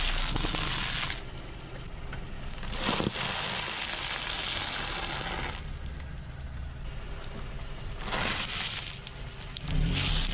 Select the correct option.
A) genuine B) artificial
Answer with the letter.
A